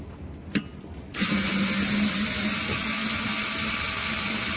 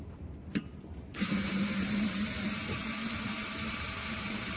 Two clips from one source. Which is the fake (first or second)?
second